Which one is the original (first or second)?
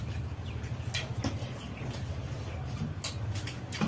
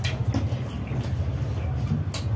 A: second